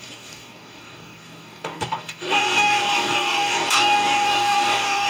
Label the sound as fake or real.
fake